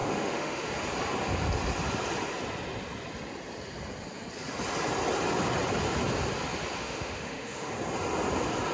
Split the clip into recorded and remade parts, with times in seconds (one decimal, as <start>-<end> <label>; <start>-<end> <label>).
0.0-0.7 remade; 0.7-6.8 recorded; 6.8-7.7 remade; 7.7-8.7 recorded